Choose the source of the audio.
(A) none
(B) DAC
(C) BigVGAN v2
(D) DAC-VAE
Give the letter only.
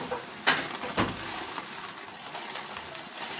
A